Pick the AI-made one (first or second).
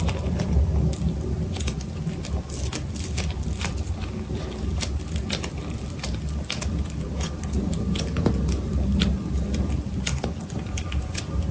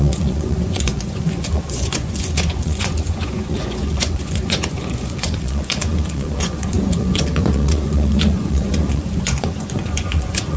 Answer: second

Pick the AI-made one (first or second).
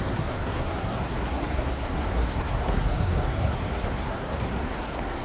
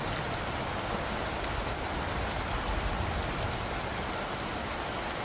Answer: first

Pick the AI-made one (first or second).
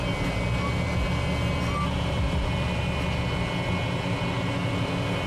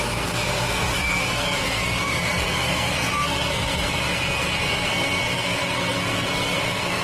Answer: second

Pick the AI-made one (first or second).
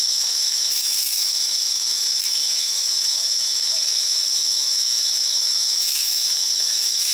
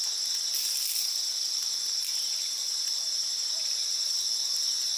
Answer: first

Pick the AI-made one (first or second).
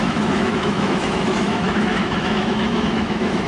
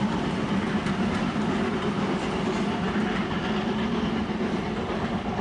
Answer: first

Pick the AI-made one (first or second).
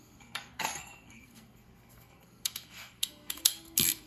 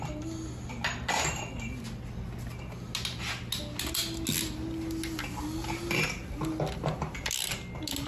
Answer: first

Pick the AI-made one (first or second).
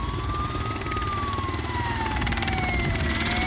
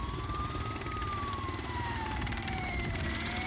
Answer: second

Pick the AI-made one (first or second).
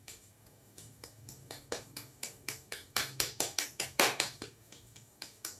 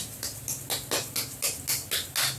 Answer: first